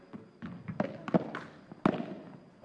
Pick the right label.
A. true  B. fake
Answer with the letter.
A